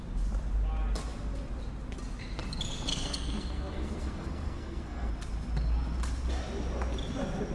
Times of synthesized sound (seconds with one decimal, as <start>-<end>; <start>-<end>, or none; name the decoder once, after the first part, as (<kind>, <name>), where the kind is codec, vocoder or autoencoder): 2.9-5.1 (codec, SNAC)